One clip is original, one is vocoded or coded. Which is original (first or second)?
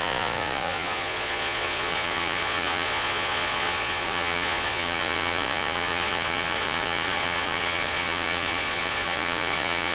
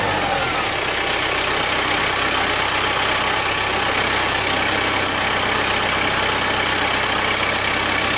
second